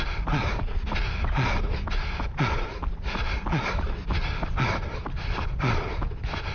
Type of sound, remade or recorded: recorded